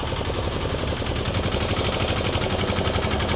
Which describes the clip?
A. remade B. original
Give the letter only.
B